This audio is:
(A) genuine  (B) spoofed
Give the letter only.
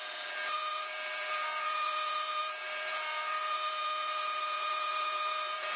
B